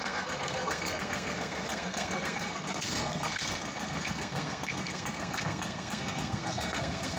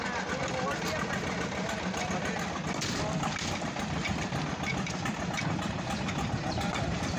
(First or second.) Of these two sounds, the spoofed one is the first